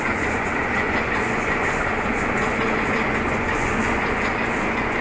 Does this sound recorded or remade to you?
remade